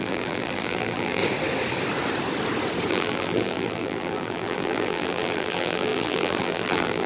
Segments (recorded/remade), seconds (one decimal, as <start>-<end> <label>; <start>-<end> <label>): 0.0-1.2 remade; 1.2-2.9 recorded; 2.9-7.1 remade

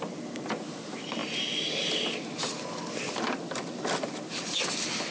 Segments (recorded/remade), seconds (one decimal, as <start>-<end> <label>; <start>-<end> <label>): 0.0-5.1 recorded

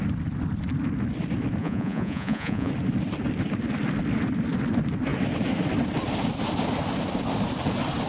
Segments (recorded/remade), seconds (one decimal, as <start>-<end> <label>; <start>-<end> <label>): 0.0-1.6 recorded; 1.6-2.7 remade; 2.7-8.1 recorded

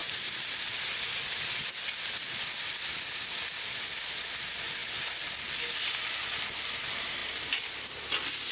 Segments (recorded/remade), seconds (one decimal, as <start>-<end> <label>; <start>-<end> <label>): 0.0-0.5 remade; 0.5-8.5 recorded

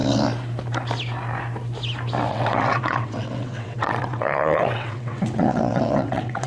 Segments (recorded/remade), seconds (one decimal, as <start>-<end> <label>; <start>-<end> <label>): 0.0-2.3 recorded; 2.3-6.5 remade

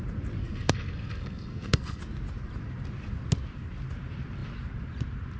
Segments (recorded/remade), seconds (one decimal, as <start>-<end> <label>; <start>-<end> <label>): 0.0-0.4 recorded; 0.4-2.0 remade; 2.0-5.4 recorded